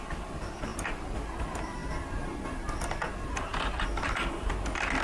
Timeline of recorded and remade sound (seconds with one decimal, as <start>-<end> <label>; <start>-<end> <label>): 0.0-3.5 recorded; 3.5-4.5 remade; 4.5-5.0 recorded